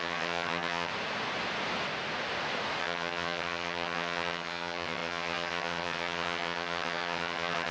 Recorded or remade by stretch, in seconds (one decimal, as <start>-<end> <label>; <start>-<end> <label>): 0.0-0.9 remade; 0.9-2.8 recorded; 2.8-7.7 remade